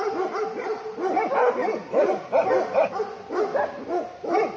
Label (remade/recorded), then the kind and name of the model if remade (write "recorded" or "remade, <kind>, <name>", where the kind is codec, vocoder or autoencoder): recorded